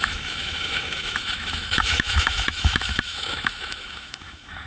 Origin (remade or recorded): remade